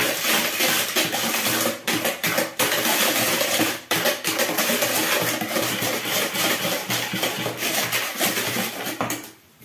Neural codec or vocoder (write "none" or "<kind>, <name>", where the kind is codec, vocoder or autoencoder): none